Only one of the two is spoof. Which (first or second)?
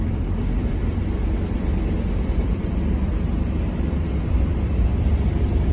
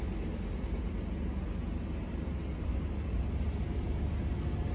first